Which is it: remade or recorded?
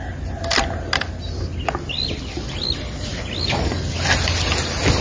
recorded